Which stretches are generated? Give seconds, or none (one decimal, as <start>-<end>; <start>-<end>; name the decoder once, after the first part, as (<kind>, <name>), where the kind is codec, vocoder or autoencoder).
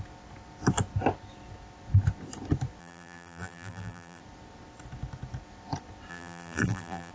2.8-4.2 (vocoder, BigVGAN v2); 6.1-7.1